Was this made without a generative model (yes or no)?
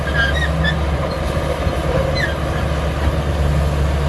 yes